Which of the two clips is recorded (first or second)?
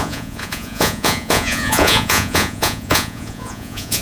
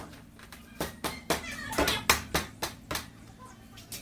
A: second